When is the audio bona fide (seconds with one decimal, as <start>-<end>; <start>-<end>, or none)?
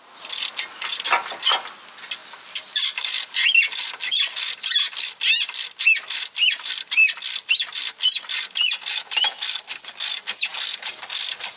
0.0-2.2; 3.3-11.6